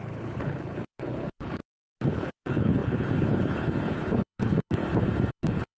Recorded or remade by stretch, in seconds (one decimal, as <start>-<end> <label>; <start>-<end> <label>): 0.0-1.6 remade; 1.6-2.1 recorded; 2.1-4.8 remade; 4.8-5.3 recorded; 5.3-5.8 remade